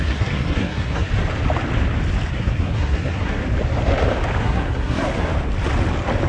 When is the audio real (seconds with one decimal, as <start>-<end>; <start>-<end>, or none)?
1.1-2.3; 3.4-4.4; 5.3-6.3